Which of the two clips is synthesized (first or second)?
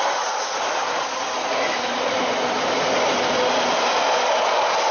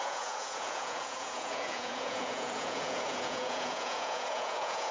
second